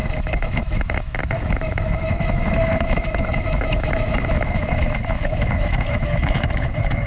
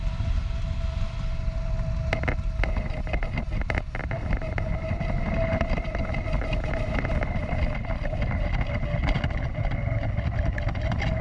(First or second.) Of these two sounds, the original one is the second